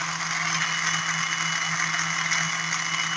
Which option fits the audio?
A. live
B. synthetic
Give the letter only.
A